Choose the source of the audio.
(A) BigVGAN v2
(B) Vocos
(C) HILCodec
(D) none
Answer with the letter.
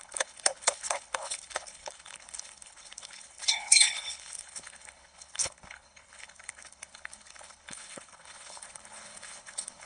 C